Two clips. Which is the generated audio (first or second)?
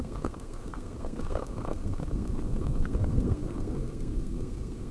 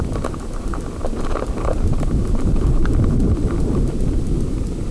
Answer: first